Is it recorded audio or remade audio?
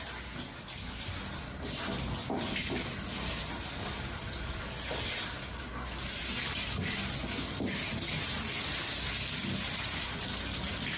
recorded